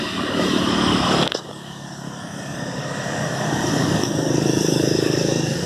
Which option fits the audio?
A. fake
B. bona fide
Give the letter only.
A